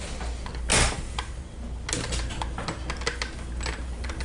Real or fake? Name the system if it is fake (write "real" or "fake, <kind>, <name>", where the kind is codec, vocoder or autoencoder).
real